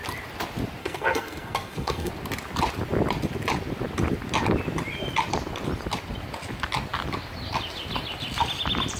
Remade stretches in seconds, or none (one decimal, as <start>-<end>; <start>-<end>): 0.8-2.1